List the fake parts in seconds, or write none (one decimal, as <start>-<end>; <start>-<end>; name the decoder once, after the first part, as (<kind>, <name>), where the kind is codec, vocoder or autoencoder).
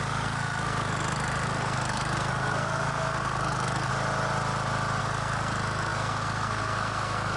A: 0.0-3.9 (codec, SNAC); 5.0-7.4